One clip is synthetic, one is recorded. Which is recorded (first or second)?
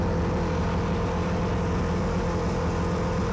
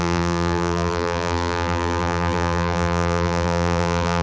first